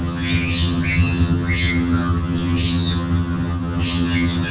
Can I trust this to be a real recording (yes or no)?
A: no